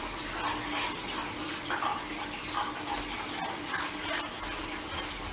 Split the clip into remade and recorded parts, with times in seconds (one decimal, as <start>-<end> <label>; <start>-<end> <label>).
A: 0.0-5.3 recorded